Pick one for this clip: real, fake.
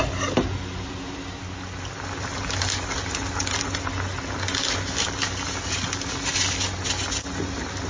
real